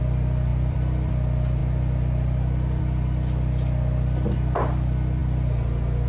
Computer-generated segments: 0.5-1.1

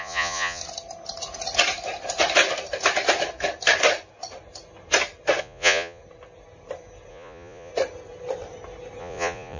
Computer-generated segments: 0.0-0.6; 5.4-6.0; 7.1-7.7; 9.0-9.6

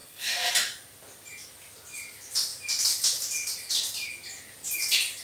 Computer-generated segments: 0.0-0.5